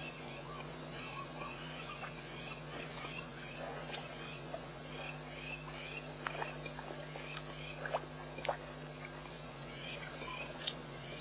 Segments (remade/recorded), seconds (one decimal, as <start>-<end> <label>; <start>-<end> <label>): 0.0-4.8 remade; 4.8-9.3 recorded; 9.3-11.2 remade